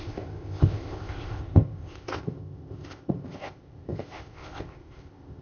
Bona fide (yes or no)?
no